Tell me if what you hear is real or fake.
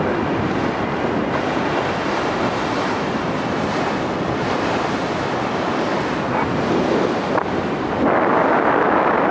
real